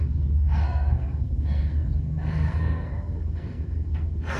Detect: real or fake fake